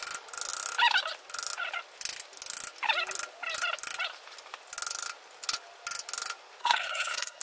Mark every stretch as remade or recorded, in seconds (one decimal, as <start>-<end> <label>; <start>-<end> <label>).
0.0-6.6 recorded; 6.6-7.4 remade